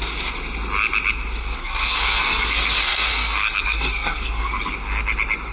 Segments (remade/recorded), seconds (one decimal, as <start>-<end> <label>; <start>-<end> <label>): 0.0-1.4 recorded; 1.4-4.5 remade; 4.5-5.5 recorded